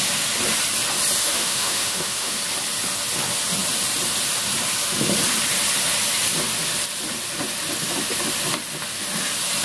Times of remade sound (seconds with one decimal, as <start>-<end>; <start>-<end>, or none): 1.2-2.4